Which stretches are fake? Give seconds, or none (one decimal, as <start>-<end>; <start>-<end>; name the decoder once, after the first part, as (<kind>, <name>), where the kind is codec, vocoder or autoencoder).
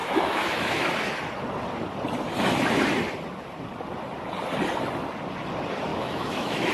0.0-0.9 (autoencoder, DAC-VAE); 5.9-6.7